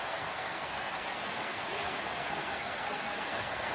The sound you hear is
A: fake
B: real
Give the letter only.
A